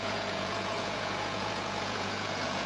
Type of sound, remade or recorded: remade